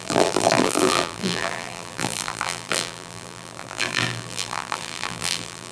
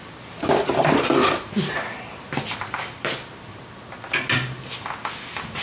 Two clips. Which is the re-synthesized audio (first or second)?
first